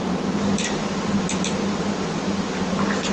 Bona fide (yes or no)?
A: yes